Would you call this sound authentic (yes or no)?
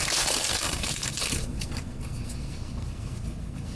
no